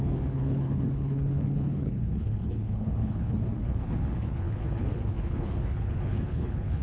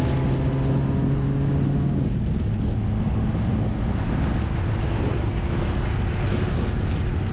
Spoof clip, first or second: first